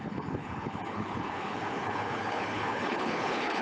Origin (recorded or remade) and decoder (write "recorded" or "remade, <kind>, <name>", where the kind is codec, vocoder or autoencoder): remade, codec, HILCodec